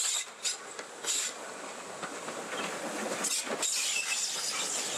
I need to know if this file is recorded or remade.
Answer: recorded